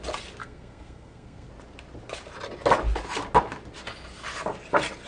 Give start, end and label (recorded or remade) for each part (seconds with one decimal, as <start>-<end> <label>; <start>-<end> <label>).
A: 0.0-0.4 recorded; 0.4-1.5 remade; 1.5-5.1 recorded